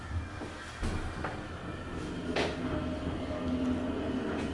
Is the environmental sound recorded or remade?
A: recorded